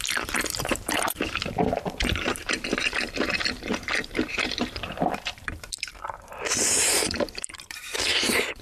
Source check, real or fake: fake